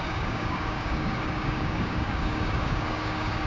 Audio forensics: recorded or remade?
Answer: remade